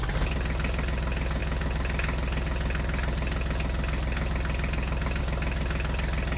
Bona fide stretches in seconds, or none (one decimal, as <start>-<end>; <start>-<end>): 0.0-6.4